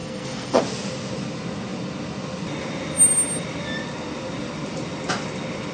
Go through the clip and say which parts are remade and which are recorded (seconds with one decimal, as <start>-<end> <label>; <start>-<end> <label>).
0.0-0.6 remade; 0.6-5.7 recorded